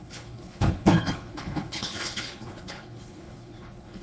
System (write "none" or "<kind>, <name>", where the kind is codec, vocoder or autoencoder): codec, HILCodec